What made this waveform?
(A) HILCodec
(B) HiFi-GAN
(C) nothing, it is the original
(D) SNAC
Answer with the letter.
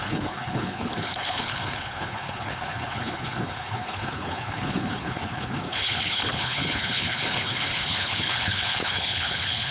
A